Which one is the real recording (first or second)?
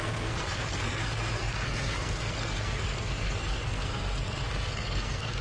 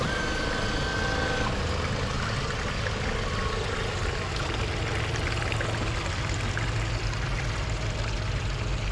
second